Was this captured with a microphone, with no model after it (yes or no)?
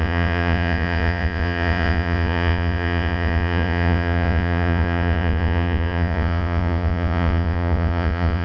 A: no